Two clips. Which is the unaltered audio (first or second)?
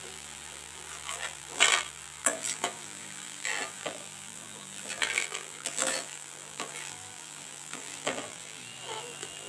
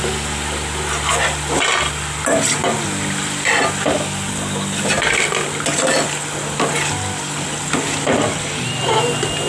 second